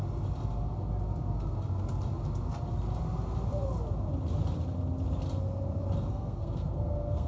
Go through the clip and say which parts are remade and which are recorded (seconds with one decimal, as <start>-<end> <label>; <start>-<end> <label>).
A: 0.0-6.1 recorded; 6.1-7.3 remade